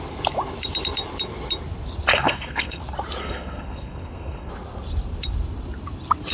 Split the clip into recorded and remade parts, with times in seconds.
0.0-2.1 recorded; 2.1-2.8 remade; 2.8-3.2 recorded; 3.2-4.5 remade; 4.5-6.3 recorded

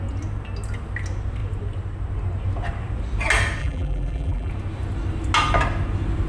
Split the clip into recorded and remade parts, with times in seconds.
0.0-3.6 recorded; 3.6-4.5 remade; 4.5-6.3 recorded

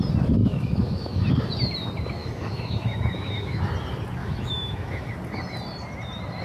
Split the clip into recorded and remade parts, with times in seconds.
0.0-0.4 recorded; 0.4-1.3 remade; 1.3-2.2 recorded; 2.2-3.6 remade; 3.6-4.2 recorded; 4.2-5.1 remade; 5.1-6.4 recorded